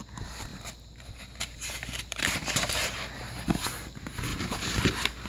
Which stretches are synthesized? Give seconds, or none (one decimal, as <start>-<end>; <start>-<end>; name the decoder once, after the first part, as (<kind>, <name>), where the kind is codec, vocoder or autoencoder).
0.5-3.0 (vocoder, BigVGAN v2); 4.3-4.8